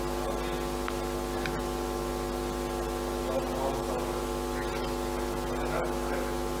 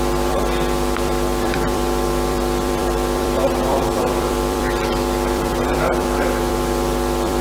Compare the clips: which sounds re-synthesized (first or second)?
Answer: second